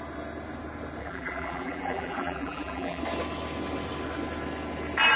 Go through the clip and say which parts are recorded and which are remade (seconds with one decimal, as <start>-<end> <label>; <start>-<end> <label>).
0.0-1.0 recorded; 1.0-3.0 remade; 3.0-5.2 recorded